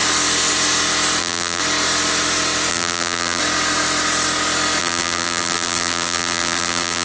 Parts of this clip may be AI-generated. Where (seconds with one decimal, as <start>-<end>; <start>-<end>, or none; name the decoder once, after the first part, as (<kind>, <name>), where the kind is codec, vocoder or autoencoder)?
1.2-1.6 (vocoder, BigVGAN v2); 2.7-3.4; 4.8-7.0